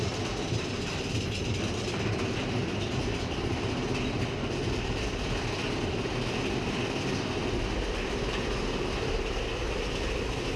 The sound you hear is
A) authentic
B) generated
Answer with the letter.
A